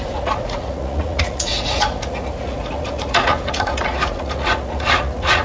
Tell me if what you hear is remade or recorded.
remade